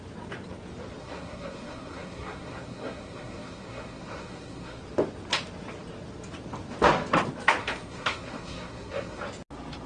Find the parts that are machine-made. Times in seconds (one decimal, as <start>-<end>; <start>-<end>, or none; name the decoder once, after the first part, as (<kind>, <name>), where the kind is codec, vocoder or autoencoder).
1.0-4.8 (codec, SNAC); 7.6-9.2